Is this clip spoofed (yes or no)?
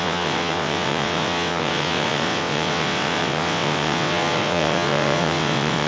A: yes